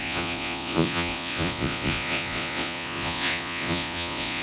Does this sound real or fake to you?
fake